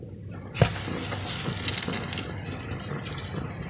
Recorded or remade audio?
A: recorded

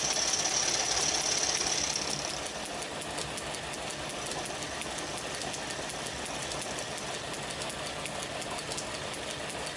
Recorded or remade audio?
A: recorded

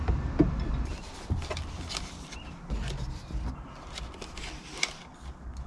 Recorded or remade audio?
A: recorded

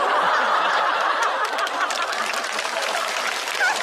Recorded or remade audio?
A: remade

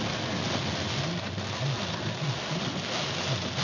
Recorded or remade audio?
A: recorded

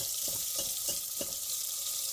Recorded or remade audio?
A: remade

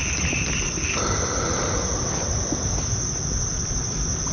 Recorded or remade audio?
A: recorded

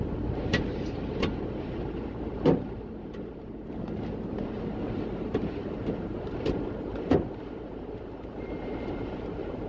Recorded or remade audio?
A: remade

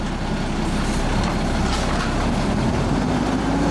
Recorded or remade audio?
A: recorded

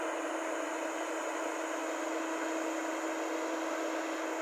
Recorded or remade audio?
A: recorded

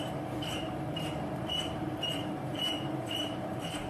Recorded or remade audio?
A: remade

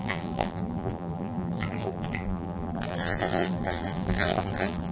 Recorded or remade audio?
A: remade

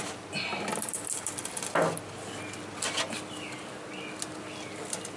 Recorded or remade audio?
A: recorded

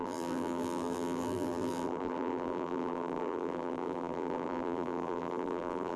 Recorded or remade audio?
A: remade